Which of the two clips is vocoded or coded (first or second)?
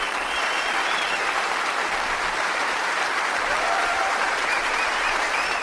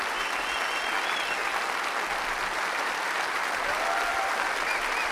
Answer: first